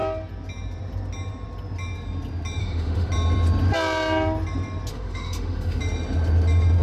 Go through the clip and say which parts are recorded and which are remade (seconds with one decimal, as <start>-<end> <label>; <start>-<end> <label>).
0.0-2.6 recorded; 2.6-3.1 remade; 3.1-4.9 recorded; 4.9-5.8 remade; 5.8-6.8 recorded